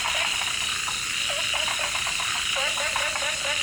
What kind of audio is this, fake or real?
real